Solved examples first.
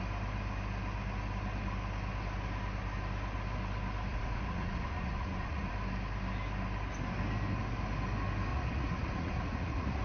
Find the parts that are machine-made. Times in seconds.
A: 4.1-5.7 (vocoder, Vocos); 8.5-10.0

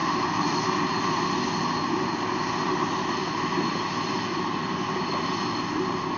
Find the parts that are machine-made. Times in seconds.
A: none